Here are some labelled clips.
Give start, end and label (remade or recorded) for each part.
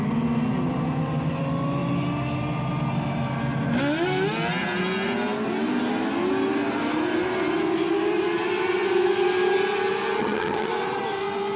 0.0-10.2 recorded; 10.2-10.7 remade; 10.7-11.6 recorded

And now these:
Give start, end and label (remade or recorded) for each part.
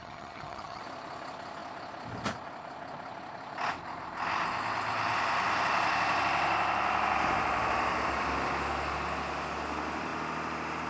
0.0-0.8 remade; 0.8-10.9 recorded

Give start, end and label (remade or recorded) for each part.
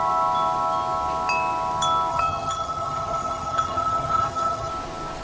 0.0-2.1 recorded; 2.1-4.7 remade; 4.7-5.2 recorded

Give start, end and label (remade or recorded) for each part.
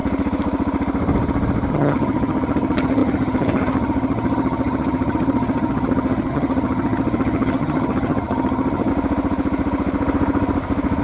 0.0-1.7 recorded; 1.7-8.9 remade; 8.9-11.0 recorded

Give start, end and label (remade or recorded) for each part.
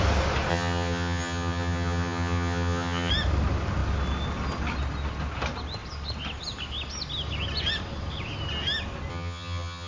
0.0-0.5 recorded; 0.5-3.1 remade; 3.1-9.1 recorded; 9.1-9.9 remade